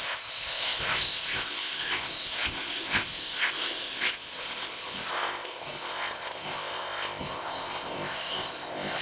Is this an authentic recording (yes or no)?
no